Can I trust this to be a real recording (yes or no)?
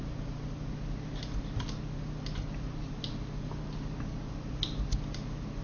yes